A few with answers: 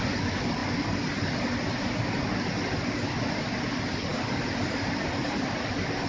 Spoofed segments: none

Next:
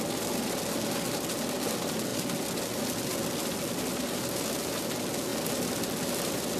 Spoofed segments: none